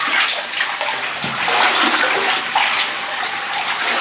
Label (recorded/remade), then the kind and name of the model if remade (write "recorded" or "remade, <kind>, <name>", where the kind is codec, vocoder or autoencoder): recorded